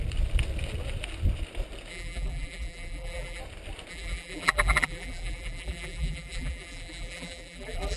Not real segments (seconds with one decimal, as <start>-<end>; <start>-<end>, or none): 1.9-3.4; 3.9-8.0